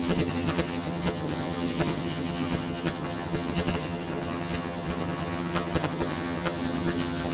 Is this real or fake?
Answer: fake